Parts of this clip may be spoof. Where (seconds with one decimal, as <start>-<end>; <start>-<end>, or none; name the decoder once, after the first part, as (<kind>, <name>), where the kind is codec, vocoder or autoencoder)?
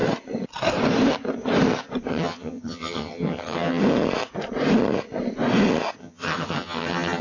2.1-3.8 (vocoder, HiFi-GAN); 6.0-7.2